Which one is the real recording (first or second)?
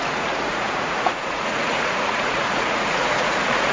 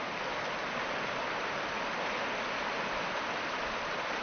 second